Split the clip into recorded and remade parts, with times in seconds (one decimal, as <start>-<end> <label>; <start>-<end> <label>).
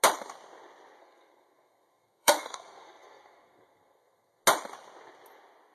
0.0-1.0 recorded; 1.0-4.4 remade; 4.4-5.7 recorded